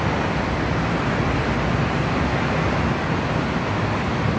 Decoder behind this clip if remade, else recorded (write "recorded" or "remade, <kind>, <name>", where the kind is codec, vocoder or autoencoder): recorded